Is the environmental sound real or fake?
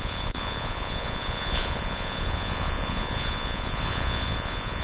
fake